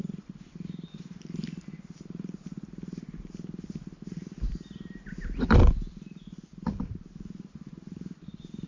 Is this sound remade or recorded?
remade